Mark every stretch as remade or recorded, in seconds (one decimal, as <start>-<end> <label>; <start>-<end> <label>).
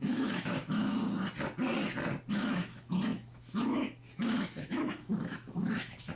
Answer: 0.0-1.0 remade; 1.0-2.3 recorded; 2.3-6.2 remade